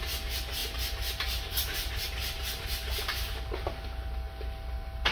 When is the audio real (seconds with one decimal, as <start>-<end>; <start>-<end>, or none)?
0.0-0.6; 3.4-5.1